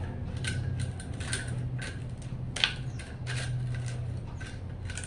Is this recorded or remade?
recorded